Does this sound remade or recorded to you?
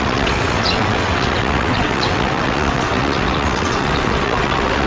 remade